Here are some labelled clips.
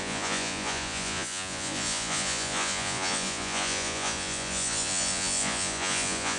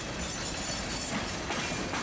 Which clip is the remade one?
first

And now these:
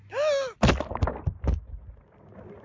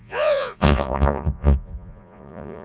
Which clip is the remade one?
second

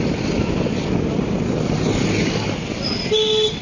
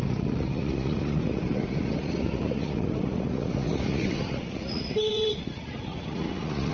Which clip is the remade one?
second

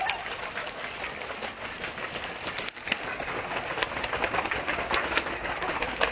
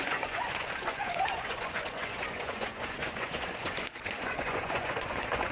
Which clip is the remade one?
second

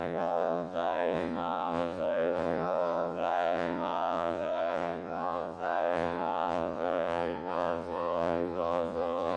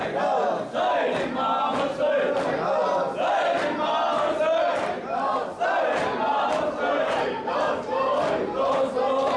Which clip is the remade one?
first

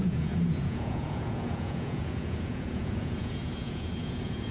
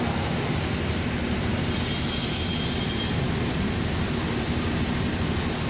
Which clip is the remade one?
first